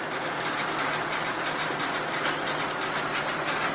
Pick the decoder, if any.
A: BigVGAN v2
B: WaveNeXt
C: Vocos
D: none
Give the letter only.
D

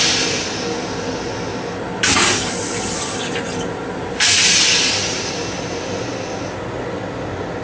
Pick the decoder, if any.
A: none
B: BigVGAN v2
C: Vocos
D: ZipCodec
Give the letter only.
A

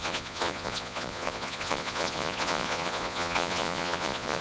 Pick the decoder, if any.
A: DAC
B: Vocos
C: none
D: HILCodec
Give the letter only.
B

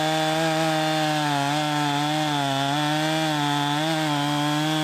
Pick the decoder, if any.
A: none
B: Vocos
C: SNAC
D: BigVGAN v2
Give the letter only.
A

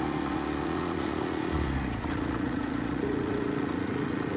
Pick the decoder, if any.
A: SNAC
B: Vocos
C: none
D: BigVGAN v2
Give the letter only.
B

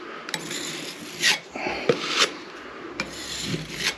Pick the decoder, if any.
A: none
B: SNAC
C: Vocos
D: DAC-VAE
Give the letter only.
A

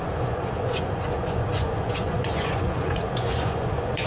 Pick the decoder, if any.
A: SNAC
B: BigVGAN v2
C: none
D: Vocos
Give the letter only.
D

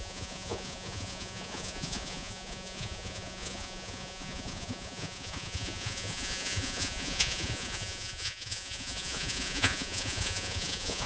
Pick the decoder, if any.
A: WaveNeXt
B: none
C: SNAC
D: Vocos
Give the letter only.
D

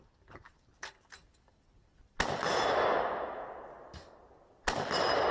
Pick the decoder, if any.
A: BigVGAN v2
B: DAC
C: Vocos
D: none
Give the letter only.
D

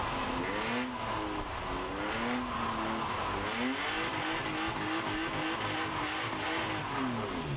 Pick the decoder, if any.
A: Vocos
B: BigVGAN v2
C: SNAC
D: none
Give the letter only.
D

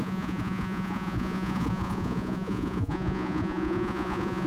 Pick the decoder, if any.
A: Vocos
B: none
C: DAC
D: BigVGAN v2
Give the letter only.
A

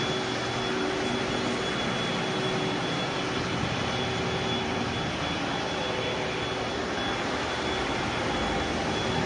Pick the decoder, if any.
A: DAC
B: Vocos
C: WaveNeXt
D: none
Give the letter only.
D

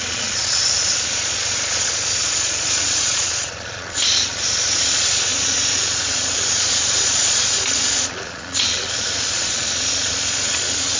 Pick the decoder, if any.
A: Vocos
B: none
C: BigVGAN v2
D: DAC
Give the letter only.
A